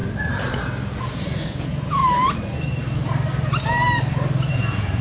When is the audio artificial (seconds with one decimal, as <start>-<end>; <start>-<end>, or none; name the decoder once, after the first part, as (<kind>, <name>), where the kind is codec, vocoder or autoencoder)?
1.0-2.0 (vocoder, Vocos); 4.5-5.0